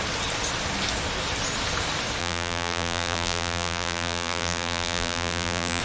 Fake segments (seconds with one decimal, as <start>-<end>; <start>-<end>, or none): 2.2-5.8